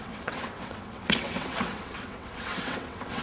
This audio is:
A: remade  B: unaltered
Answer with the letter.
A